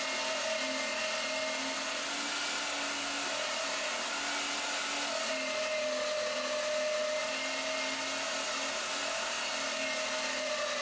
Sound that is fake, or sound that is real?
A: real